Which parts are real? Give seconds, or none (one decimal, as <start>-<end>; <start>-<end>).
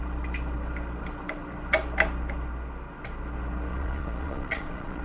0.0-3.7